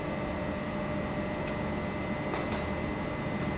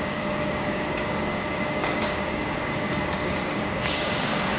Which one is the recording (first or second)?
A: first